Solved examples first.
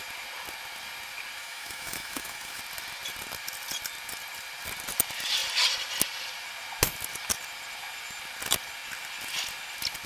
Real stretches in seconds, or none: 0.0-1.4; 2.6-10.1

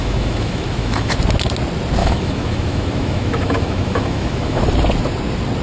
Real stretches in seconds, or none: 1.2-2.0; 4.6-5.6

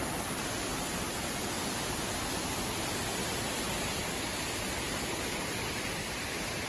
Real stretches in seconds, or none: 0.7-1.4; 3.2-4.1